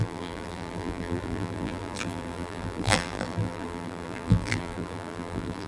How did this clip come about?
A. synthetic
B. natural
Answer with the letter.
A